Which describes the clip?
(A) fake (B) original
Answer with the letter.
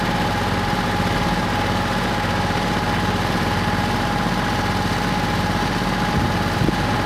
B